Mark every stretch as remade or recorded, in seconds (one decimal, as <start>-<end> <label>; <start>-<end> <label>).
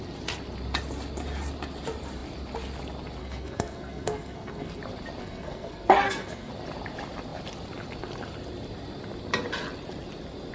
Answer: 0.0-3.2 recorded; 3.2-4.8 remade; 4.8-5.2 recorded; 5.2-6.5 remade; 6.5-10.5 recorded